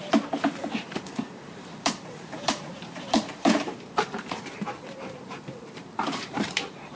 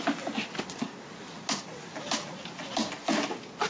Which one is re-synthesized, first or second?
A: first